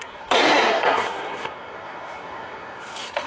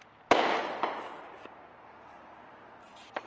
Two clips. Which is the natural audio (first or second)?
second